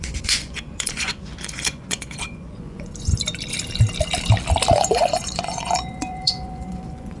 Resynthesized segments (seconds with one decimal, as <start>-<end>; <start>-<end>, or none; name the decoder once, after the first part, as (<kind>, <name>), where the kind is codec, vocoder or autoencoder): 0.0-3.1 (vocoder, Vocos); 4.7-7.2